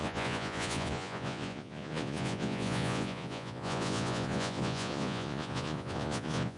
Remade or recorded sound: remade